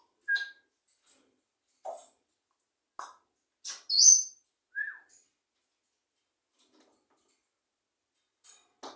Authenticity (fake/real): real